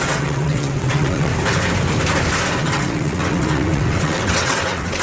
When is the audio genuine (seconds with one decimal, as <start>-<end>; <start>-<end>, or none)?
1.3-2.6

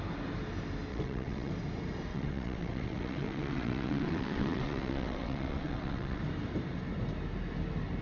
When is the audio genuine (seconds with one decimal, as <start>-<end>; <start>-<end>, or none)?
0.0-0.9; 1.5-2.1; 6.2-8.0

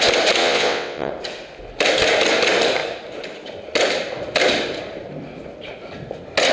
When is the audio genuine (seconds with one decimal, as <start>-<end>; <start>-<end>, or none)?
0.0-0.4; 1.1-6.5

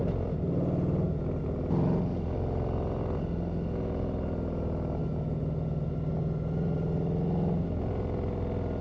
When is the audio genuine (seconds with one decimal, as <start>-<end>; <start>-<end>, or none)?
0.0-8.8